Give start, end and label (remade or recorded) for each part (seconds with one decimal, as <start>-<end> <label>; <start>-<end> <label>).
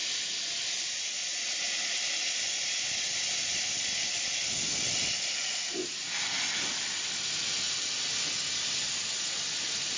0.0-10.0 recorded